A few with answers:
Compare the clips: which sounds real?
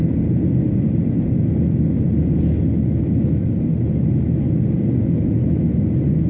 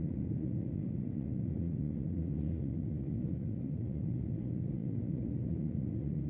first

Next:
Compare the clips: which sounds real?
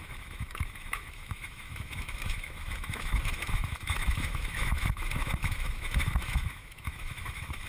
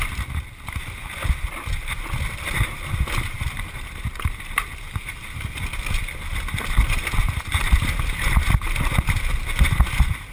second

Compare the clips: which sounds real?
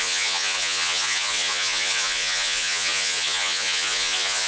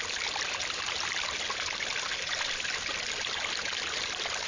second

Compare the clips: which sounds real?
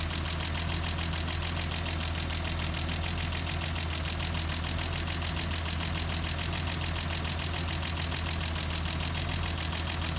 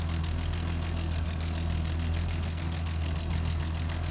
first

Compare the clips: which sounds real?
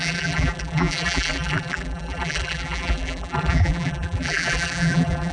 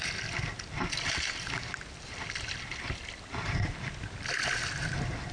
second